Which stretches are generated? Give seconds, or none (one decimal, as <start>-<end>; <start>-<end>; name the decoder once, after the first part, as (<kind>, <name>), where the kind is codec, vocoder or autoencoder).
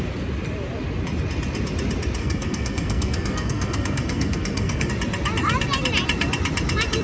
2.2-4.9 (codec, SNAC)